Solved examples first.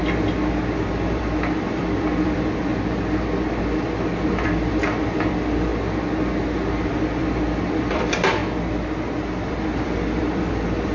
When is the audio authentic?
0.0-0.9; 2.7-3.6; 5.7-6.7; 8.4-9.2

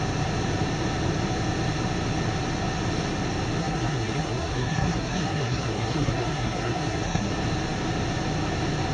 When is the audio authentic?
0.0-3.6; 7.3-8.9